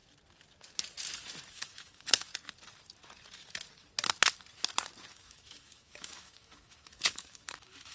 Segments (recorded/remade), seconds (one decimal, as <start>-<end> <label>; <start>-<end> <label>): 0.0-1.5 recorded; 1.5-2.3 remade; 2.3-5.1 recorded; 5.1-7.9 remade